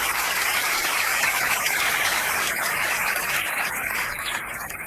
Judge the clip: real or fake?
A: fake